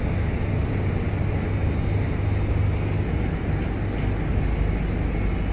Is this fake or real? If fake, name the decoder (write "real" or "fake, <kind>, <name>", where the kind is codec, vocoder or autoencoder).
real